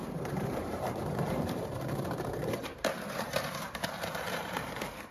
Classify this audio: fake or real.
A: fake